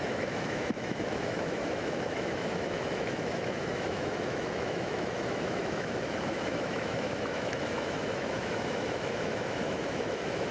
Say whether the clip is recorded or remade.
remade